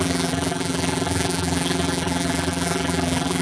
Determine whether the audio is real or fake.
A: fake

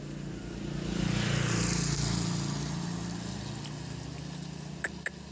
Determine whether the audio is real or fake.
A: real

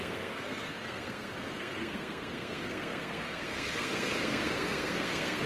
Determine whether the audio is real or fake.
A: fake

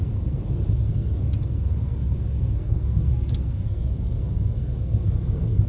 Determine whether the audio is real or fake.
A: fake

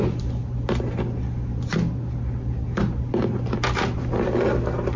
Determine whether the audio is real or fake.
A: real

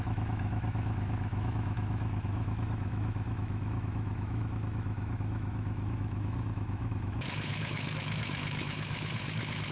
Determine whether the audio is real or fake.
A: fake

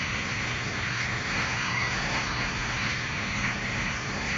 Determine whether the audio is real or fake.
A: fake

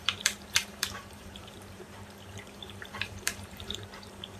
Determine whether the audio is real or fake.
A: fake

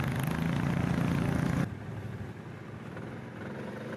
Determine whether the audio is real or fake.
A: real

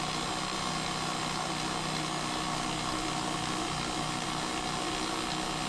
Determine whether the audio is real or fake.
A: real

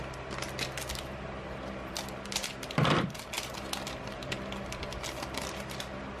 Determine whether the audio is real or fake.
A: real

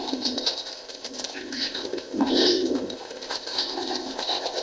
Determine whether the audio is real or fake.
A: fake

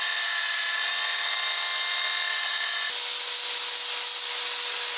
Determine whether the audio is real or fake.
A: real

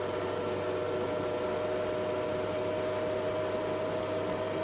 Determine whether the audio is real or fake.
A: real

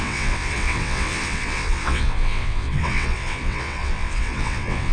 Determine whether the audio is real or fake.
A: fake